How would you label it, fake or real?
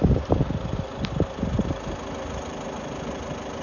real